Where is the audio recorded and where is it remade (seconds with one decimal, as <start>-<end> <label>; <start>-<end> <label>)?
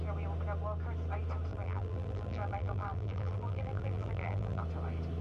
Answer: 0.0-1.5 recorded; 1.5-4.6 remade; 4.6-5.2 recorded